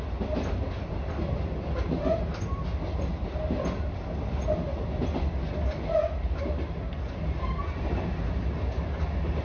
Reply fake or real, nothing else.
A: real